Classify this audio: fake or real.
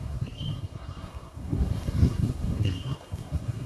fake